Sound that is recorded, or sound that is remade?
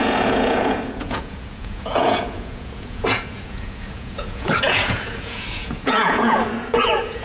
remade